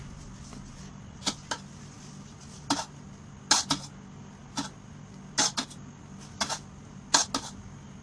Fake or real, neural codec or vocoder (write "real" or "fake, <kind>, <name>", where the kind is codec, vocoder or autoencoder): real